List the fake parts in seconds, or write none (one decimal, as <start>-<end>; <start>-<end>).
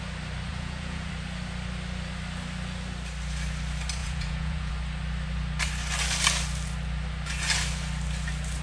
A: 0.5-1.1; 4.0-4.7